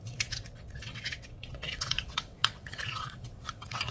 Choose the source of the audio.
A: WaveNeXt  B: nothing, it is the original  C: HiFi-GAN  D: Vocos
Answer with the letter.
A